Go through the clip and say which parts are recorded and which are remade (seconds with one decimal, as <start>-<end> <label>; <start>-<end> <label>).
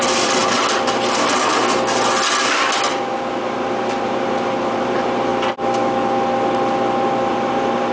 0.0-0.4 remade; 0.4-2.9 recorded; 2.9-5.3 remade; 5.3-7.3 recorded; 7.3-7.9 remade